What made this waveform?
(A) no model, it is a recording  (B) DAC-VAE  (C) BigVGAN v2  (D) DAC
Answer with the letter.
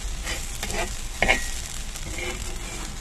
A